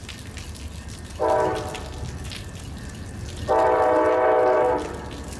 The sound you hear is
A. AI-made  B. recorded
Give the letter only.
B